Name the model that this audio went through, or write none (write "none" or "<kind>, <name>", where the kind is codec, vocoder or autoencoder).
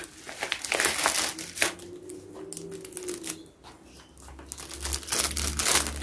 none